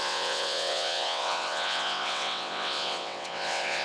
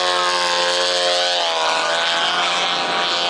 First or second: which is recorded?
second